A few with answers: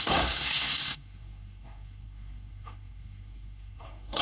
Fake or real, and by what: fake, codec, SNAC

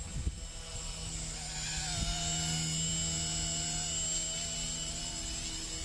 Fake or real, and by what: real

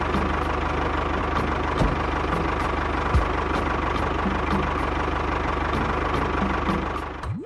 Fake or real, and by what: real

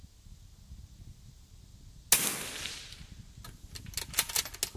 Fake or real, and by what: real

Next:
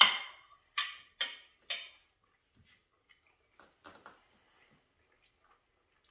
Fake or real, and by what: real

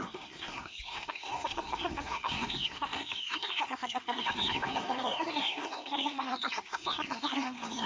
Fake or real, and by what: fake, codec, SNAC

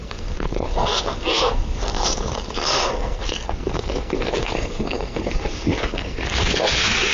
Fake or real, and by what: fake, codec, SNAC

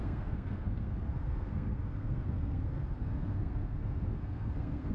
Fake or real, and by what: fake, codec, SNAC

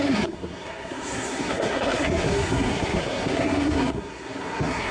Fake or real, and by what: fake, codec, SNAC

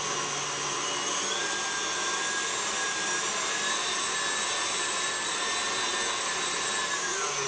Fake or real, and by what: real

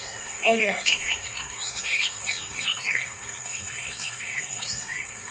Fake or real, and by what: fake, codec, SNAC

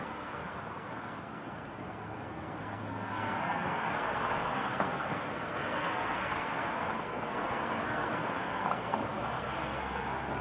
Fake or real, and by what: fake, codec, SNAC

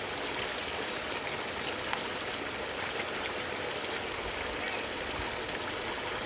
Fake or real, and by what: real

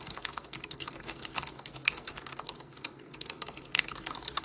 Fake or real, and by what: fake, codec, SNAC